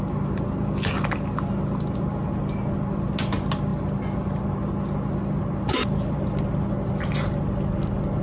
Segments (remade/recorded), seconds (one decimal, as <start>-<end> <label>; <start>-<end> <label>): 0.0-8.2 recorded